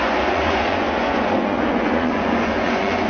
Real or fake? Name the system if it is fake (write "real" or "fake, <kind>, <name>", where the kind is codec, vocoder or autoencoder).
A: fake, vocoder, Vocos